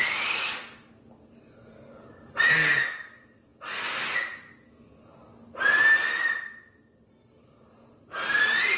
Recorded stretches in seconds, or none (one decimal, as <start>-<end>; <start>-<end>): 0.0-8.8